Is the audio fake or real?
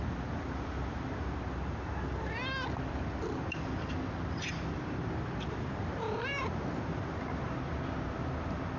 real